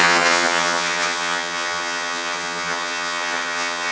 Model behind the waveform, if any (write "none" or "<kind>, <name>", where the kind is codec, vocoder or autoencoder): vocoder, HiFi-GAN